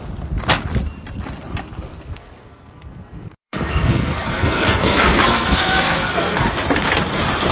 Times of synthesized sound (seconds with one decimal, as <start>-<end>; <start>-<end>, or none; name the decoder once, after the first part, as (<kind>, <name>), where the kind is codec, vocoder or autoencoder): 1.9-6.4 (codec, SNAC)